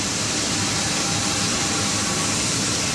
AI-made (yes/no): no